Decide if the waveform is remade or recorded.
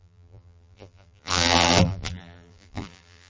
remade